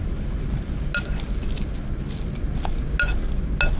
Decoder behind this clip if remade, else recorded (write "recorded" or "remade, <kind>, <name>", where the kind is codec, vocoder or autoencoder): recorded